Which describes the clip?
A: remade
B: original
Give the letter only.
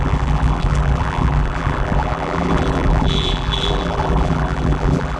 A